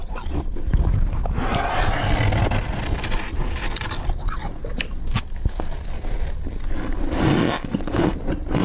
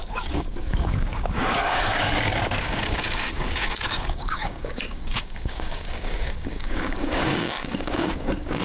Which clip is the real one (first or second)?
first